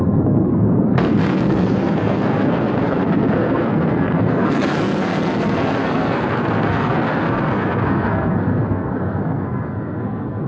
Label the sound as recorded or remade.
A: remade